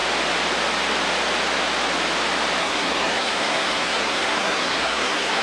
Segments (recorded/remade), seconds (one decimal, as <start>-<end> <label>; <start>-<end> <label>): 0.0-2.6 recorded; 2.6-5.4 remade